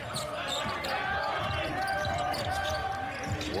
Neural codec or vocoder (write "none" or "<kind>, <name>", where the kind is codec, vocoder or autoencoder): none